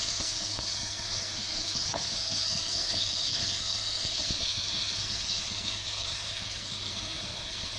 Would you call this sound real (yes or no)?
no